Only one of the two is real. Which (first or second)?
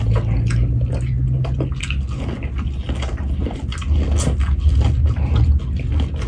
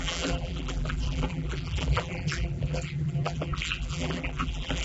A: first